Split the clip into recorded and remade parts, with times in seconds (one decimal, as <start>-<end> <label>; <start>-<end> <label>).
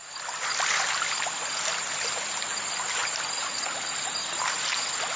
0.0-2.0 remade; 2.0-5.2 recorded